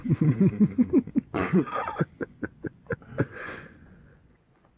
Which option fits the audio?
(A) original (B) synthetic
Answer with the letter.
B